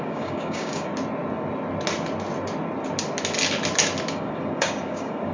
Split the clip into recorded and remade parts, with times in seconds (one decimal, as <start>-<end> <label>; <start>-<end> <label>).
0.0-0.9 remade; 0.9-4.1 recorded; 4.1-5.3 remade